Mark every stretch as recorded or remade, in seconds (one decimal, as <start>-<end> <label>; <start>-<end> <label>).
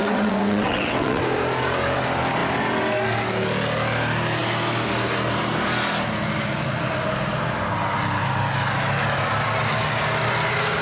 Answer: 0.0-1.2 remade; 1.2-10.8 recorded